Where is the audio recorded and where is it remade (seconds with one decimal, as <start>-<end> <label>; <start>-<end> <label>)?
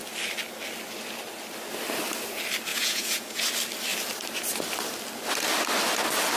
0.0-2.7 recorded; 2.7-3.4 remade; 3.4-6.4 recorded